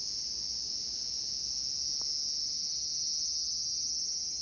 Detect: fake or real real